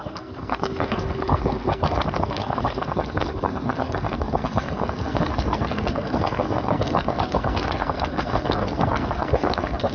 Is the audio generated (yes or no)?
yes